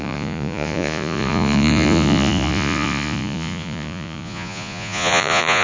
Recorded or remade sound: remade